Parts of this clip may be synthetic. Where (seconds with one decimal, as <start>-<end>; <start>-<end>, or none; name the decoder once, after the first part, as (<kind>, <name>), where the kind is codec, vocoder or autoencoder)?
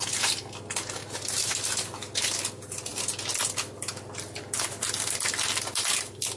1.0-1.5 (vocoder, BigVGAN v2)